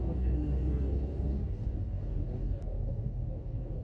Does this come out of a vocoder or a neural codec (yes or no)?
yes